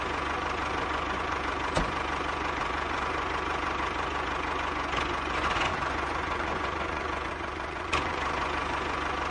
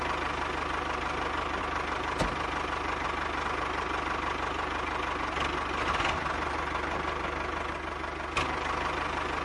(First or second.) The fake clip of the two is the first